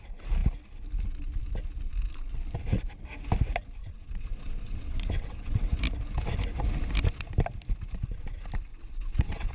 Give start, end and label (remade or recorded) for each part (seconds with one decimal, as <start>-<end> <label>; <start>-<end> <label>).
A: 0.0-3.8 recorded; 3.8-5.8 remade; 5.8-8.7 recorded; 8.7-9.5 remade